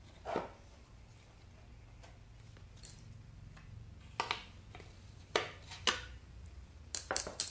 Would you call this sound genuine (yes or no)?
yes